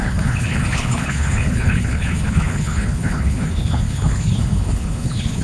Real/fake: fake